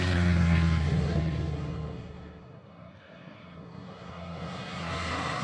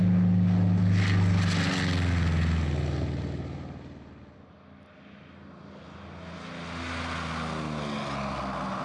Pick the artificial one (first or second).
first